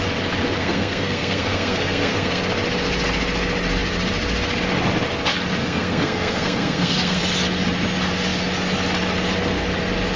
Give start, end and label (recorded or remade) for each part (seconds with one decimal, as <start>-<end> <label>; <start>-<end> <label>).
0.0-0.6 recorded; 0.6-2.4 remade; 2.4-5.6 recorded; 5.6-7.2 remade; 7.2-10.2 recorded